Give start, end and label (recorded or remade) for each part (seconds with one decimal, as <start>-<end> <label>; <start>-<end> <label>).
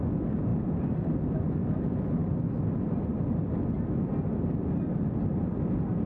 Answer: 0.0-0.5 recorded; 0.5-1.4 remade; 1.4-2.2 recorded; 2.2-3.5 remade; 3.5-6.1 recorded